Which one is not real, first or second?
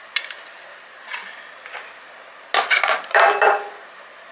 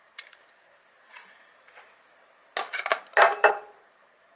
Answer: second